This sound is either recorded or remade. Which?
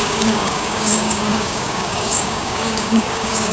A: remade